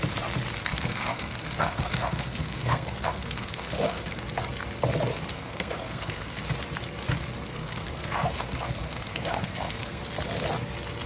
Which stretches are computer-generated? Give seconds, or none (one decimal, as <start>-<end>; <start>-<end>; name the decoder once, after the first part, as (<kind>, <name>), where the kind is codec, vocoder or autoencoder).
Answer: 0.6-4.2 (codec, SNAC); 5.3-6.4; 7.5-10.0